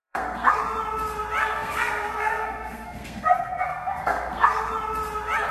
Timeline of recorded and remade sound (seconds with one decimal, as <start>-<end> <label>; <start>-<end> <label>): 0.0-0.6 remade; 0.6-1.4 recorded; 1.4-4.7 remade; 4.7-5.5 recorded